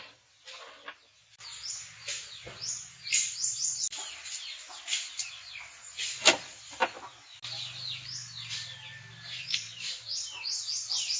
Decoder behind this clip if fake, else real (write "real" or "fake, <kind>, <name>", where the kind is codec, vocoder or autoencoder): real